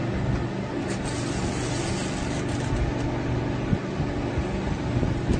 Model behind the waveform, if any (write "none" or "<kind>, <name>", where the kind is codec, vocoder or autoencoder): none